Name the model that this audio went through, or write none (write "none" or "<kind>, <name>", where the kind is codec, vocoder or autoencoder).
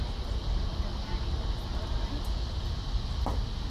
none